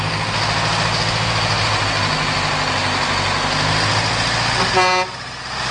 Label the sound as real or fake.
real